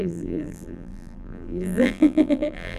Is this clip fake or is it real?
fake